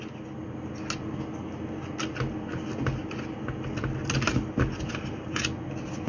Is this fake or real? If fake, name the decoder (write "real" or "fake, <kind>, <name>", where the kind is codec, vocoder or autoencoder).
real